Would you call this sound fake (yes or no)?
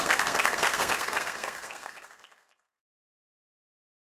yes